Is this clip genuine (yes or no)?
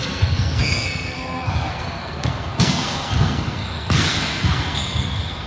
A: no